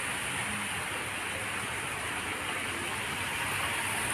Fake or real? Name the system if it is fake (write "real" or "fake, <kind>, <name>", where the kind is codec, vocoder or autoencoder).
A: real